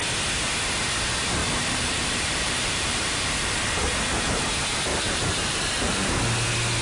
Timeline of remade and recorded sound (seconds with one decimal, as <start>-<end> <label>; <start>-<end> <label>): 0.0-1.4 recorded; 1.4-4.4 remade; 4.4-4.9 recorded; 4.9-6.1 remade; 6.1-6.8 recorded